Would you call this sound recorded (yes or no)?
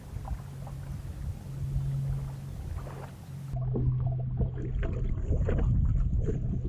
yes